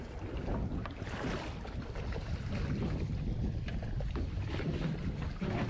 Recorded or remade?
remade